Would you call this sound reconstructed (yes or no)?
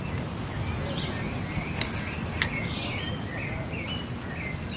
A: no